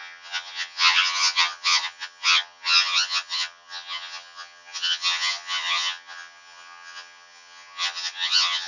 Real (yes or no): no